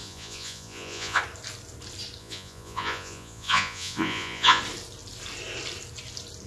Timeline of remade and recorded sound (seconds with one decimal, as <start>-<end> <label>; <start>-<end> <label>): 0.0-1.2 remade; 1.2-2.2 recorded; 2.2-4.6 remade; 4.6-6.5 recorded